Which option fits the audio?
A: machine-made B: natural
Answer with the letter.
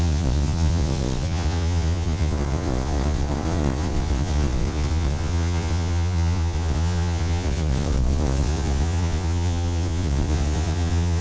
A